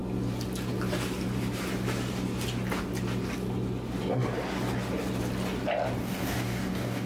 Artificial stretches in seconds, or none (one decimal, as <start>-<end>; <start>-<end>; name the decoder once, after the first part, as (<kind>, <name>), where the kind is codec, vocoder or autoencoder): 6.0-7.1 (codec, DAC)